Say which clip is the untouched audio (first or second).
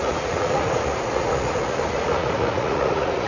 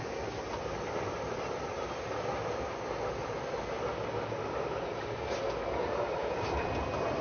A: second